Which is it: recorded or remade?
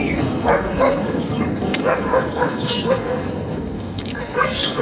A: remade